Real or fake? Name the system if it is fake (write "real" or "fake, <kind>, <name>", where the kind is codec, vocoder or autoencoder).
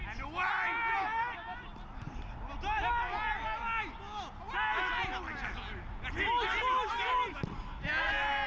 real